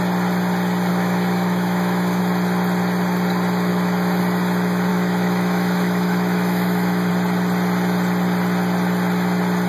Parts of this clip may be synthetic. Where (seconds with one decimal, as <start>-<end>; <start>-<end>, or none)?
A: 0.9-2.2; 3.7-4.2; 4.9-7.1